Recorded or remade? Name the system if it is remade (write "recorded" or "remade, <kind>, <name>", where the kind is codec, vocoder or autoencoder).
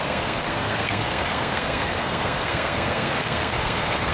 remade, codec, SNAC